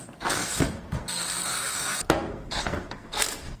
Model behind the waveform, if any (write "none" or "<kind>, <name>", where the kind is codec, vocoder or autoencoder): codec, SNAC